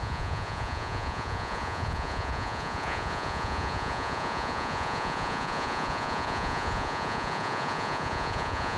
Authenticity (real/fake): fake